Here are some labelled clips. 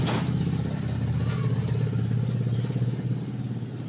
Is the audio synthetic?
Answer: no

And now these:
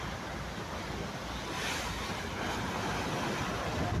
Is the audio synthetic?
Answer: no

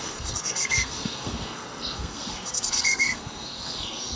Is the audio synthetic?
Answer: yes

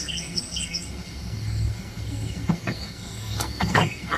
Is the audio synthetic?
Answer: yes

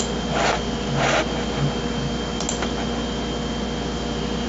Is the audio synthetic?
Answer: no